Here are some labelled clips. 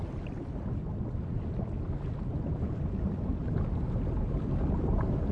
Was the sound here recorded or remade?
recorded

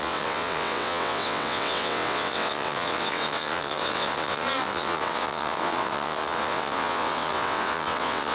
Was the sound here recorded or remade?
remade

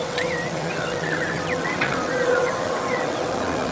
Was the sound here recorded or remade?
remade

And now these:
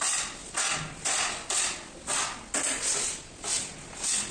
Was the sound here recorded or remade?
recorded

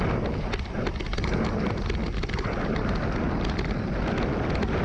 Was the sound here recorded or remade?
recorded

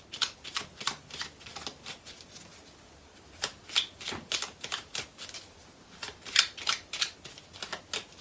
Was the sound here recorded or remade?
recorded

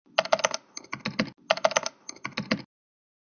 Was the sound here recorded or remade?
recorded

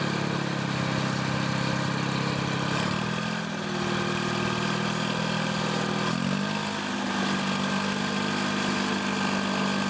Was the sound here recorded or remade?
recorded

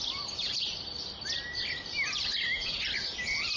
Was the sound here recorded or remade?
recorded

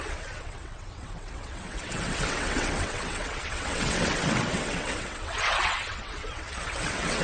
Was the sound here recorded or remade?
remade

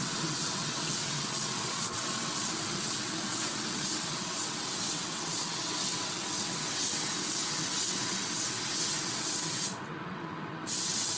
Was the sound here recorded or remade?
remade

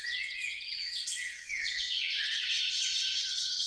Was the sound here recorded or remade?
remade